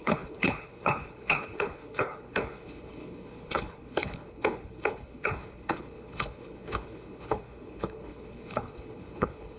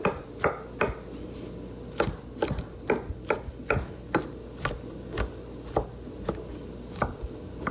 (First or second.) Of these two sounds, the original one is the second